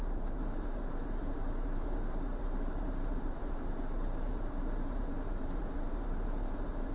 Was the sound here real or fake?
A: fake